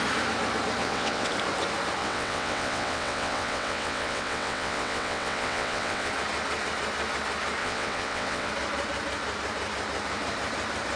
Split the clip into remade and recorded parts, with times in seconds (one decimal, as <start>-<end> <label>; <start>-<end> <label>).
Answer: 0.0-0.8 recorded; 0.8-1.3 remade; 1.3-2.0 recorded; 2.0-6.1 remade; 6.1-7.6 recorded; 7.6-8.5 remade; 8.5-11.0 recorded